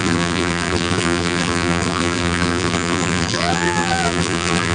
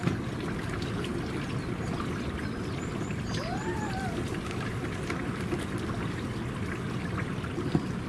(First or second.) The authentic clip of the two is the second